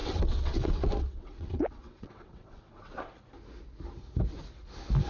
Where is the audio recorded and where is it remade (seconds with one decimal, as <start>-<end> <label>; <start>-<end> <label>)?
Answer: 0.0-3.1 remade; 3.1-5.1 recorded